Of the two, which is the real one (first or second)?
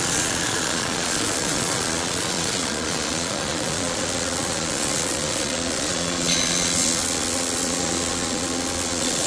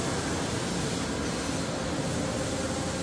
second